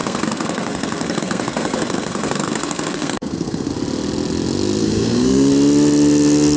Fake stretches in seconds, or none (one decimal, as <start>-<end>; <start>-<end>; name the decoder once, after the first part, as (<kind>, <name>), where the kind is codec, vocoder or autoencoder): 0.0-3.7 (codec, SNAC); 4.8-5.5